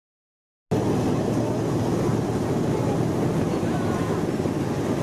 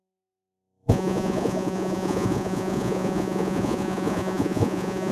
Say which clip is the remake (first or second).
second